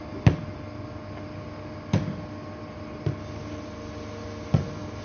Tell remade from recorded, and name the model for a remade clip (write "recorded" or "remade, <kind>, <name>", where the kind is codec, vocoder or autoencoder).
recorded